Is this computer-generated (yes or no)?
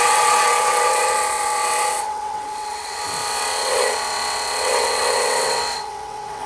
yes